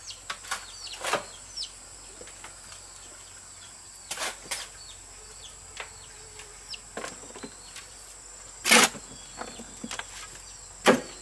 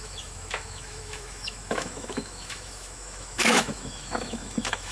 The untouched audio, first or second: first